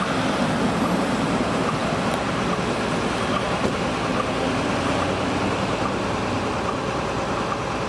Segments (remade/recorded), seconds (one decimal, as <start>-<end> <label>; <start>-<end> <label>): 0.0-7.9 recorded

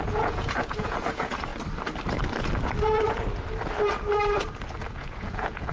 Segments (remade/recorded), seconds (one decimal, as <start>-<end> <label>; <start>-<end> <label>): 0.0-1.5 remade; 1.5-4.9 recorded; 4.9-5.7 remade

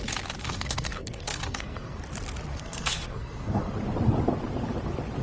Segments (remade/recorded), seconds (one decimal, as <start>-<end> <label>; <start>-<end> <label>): 0.0-0.4 recorded; 0.4-2.0 remade; 2.0-2.5 recorded; 2.5-3.7 remade; 3.7-5.2 recorded

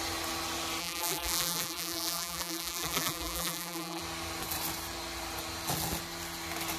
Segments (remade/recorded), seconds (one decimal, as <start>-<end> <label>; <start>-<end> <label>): 0.0-0.8 recorded; 0.8-4.0 remade; 4.0-6.8 recorded